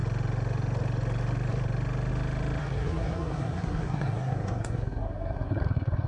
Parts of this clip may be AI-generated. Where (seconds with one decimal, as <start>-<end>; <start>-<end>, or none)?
2.6-6.1